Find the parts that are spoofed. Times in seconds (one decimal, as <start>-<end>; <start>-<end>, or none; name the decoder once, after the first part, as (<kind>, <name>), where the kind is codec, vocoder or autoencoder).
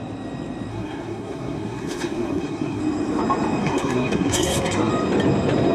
0.7-2.8 (codec, SNAC); 3.6-4.9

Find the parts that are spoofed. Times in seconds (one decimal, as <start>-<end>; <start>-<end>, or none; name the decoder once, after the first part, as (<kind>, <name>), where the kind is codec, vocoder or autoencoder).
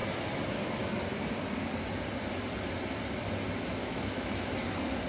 3.8-4.5 (autoencoder, DAC-VAE)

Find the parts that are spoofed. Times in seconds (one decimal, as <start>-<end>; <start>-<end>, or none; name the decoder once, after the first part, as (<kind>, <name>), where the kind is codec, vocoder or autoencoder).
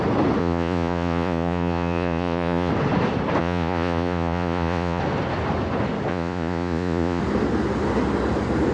0.4-2.7 (vocoder, Vocos); 3.4-5.0; 6.1-7.2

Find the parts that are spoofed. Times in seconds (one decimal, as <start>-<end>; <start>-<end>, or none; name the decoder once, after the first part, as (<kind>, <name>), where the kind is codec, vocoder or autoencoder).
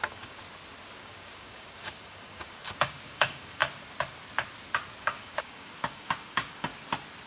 0.0-0.4 (codec, DAC); 1.0-3.6; 5.0-6.7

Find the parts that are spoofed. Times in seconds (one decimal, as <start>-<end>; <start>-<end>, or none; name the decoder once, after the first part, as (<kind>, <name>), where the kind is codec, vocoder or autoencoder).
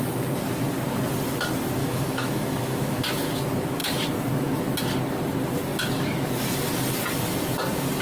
1.8-3.3 (autoencoder, DAC-VAE)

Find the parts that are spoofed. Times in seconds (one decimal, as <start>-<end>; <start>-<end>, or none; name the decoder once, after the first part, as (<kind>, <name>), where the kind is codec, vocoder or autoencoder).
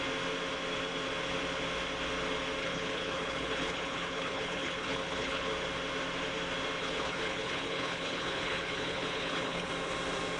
2.6-5.5 (codec, HILCodec); 6.8-9.7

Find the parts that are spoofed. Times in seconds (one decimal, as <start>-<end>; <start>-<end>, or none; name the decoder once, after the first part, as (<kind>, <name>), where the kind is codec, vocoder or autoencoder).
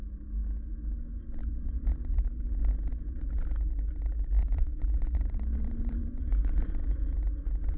1.4-2.2 (vocoder, Vocos); 4.4-7.1